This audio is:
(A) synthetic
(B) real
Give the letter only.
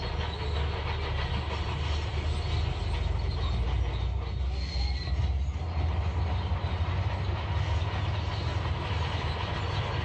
B